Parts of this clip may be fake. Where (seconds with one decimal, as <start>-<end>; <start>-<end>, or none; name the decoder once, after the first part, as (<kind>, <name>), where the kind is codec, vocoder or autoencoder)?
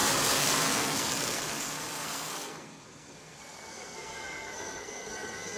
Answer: 0.0-5.6 (codec, SNAC)